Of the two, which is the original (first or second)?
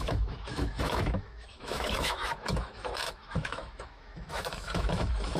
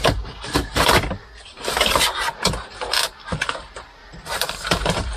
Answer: second